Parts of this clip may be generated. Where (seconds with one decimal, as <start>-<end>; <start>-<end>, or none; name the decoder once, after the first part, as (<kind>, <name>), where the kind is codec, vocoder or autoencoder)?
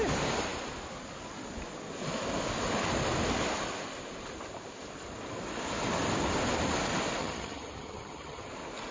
7.2-8.5 (vocoder, HiFi-GAN)